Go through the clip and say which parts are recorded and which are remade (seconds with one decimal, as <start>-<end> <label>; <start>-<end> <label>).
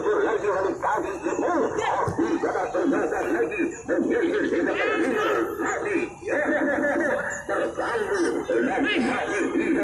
0.0-0.8 recorded; 0.8-1.8 remade; 1.8-8.1 recorded; 8.1-8.7 remade; 8.7-9.8 recorded